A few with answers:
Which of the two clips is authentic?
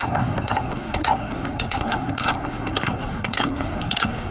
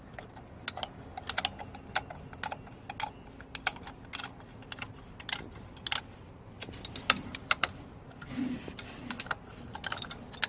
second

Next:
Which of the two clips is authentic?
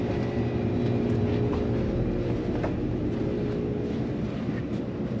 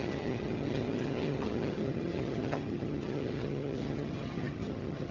first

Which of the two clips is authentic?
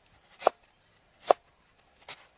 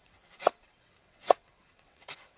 first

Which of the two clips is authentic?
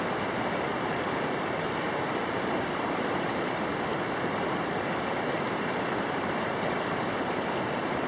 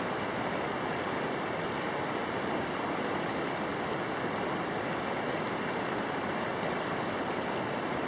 second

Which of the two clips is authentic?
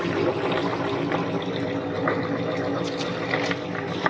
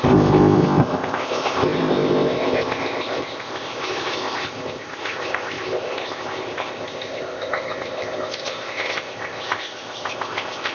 first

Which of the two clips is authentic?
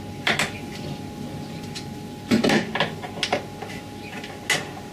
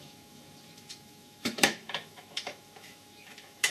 first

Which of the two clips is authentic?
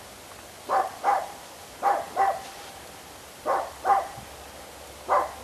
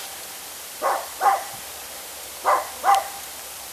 first